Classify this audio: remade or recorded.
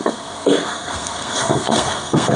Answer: remade